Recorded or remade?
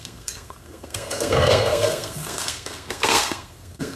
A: remade